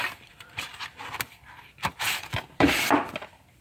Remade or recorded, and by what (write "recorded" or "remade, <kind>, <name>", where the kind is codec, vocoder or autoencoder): remade, vocoder, BigVGAN v2